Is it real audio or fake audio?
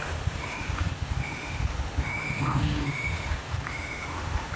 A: fake